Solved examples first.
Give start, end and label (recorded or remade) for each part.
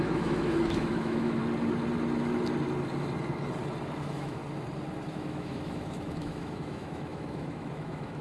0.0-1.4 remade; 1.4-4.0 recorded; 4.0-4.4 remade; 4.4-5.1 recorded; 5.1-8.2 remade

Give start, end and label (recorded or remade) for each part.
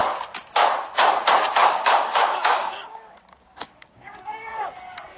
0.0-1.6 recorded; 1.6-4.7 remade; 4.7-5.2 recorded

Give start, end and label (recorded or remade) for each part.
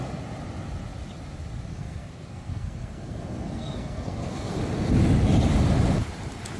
0.0-1.7 recorded; 1.7-4.6 remade; 4.6-6.6 recorded